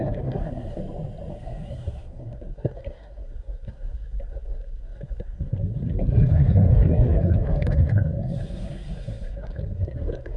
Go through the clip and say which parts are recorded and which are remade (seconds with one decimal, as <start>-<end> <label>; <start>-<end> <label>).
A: 0.0-0.8 remade; 0.8-1.3 recorded; 1.3-10.4 remade